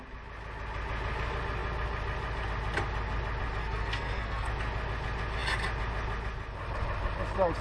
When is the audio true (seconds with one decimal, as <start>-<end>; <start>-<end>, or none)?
0.0-3.6; 4.5-7.6